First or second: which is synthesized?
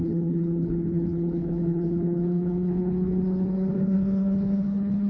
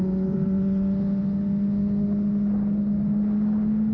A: first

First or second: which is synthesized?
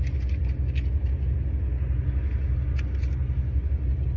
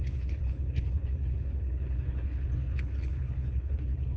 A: second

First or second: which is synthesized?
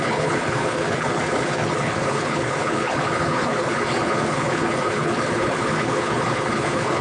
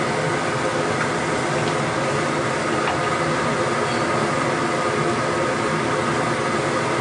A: first